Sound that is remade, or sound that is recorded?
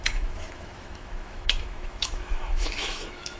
remade